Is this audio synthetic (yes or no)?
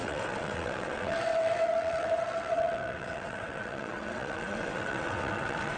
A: yes